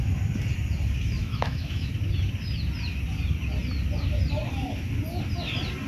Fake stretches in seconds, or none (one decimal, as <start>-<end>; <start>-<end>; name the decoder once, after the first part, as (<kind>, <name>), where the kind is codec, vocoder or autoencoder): 1.2-1.9 (autoencoder, DAC-VAE)